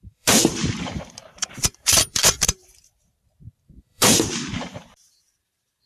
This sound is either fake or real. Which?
fake